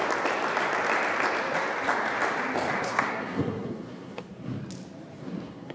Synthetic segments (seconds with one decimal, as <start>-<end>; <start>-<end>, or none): 2.8-4.6; 5.2-5.7